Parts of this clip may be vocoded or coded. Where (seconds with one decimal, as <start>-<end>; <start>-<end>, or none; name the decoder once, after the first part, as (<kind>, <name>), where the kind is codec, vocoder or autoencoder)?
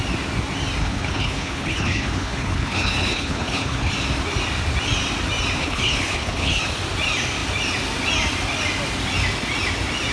0.8-3.9 (codec, HILCodec); 5.6-6.6